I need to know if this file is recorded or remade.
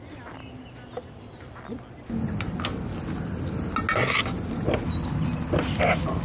recorded